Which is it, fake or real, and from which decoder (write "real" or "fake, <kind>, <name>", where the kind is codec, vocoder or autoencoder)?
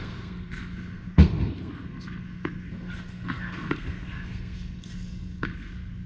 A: fake, codec, SNAC